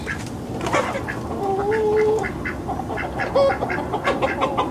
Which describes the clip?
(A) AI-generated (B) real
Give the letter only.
B